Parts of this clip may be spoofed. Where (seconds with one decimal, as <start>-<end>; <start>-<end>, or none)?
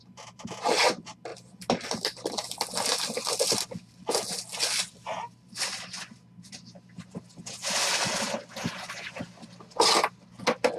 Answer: none